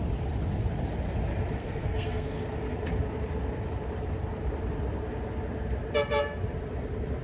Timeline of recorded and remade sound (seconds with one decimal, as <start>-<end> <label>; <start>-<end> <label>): 0.0-1.6 recorded; 1.6-2.4 remade; 2.4-7.2 recorded